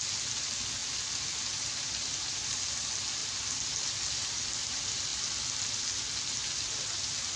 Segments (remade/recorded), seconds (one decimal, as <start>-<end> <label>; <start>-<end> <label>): 0.0-7.4 recorded